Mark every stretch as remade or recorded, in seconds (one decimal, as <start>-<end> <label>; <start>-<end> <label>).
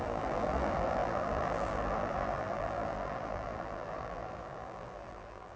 0.0-5.6 remade